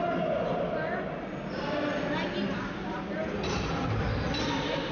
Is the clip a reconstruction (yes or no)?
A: no